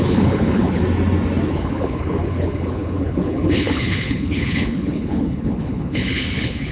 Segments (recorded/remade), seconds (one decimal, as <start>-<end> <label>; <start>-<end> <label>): 0.0-0.8 remade; 0.8-1.5 recorded; 1.5-6.7 remade